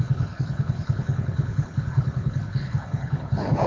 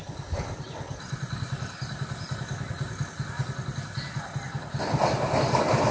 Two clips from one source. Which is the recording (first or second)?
second